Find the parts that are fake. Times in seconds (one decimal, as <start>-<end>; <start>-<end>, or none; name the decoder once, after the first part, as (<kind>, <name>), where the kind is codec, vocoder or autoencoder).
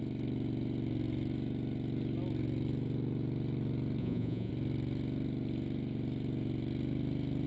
4.0-4.5 (vocoder, Vocos)